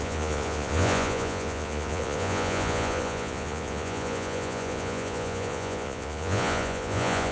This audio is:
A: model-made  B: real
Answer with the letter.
A